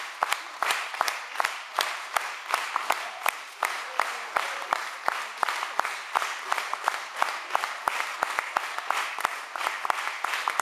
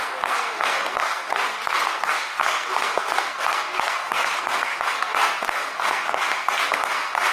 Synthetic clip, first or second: second